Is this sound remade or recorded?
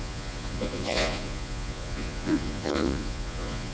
remade